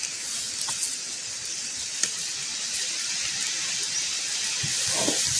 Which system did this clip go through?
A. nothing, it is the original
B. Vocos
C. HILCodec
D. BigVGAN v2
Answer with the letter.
A